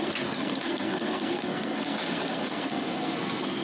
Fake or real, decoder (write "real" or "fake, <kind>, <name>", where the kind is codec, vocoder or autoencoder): fake, codec, SNAC